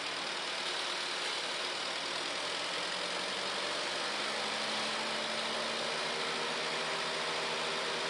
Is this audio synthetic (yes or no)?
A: no